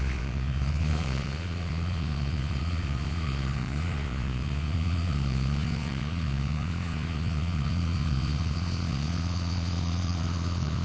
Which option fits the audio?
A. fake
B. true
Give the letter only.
A